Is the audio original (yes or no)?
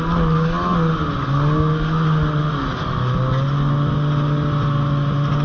yes